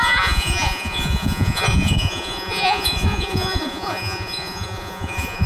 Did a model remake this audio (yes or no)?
yes